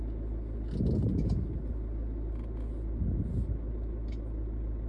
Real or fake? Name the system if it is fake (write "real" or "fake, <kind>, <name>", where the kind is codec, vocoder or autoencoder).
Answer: real